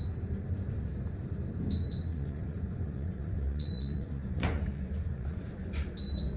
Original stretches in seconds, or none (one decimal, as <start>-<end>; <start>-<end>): 0.0-2.1; 5.9-6.4